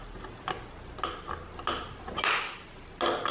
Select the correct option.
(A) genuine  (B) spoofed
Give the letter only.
A